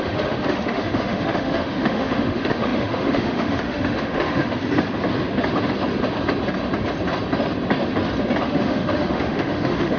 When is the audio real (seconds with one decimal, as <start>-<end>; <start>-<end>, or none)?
4.6-8.4